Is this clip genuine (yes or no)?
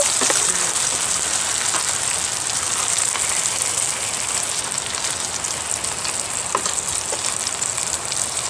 yes